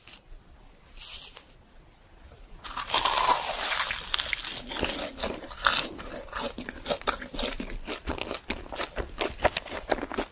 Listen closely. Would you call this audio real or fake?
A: real